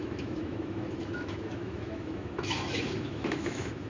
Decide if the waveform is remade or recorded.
remade